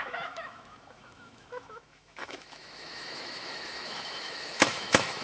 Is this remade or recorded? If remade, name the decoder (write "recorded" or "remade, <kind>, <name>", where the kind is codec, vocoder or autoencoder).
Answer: remade, autoencoder, DAC-VAE